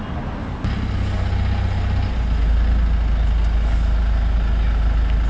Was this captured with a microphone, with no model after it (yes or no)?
yes